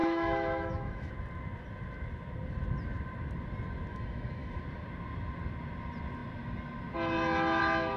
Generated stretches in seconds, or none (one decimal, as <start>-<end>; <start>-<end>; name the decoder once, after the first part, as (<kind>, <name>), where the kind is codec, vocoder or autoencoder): 0.0-1.1 (autoencoder, DAC-VAE); 3.9-4.6